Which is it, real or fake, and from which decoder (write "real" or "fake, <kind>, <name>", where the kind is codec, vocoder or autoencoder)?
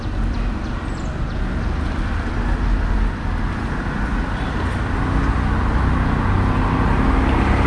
real